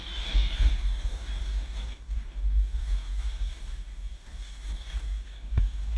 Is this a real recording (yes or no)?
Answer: no